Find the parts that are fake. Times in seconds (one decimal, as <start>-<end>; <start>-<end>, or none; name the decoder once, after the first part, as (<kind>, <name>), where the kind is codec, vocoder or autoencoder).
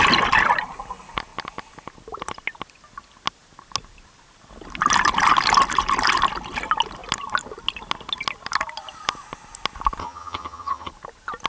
10.0-10.9 (vocoder, HiFi-GAN)